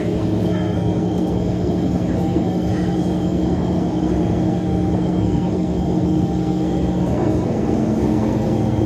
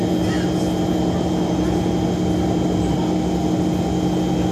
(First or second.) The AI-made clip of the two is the first